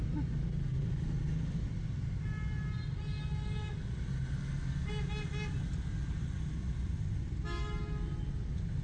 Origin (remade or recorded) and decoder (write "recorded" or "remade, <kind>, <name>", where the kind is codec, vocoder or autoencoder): recorded